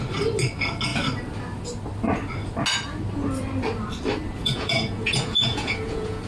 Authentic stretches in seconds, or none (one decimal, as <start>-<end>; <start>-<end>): 0.0-4.4